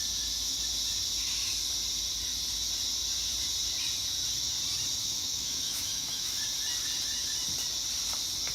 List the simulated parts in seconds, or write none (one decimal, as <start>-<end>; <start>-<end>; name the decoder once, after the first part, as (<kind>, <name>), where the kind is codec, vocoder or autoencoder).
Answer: 5.0-6.4 (autoencoder, DAC-VAE)